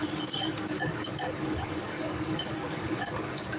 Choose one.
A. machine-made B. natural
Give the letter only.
A